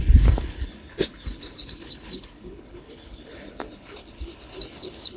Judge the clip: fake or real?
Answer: fake